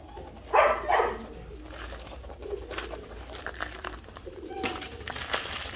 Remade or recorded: recorded